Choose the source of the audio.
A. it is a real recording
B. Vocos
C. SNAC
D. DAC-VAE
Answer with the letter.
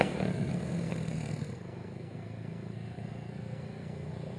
C